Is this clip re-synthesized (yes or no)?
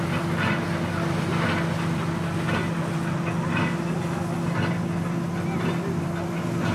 no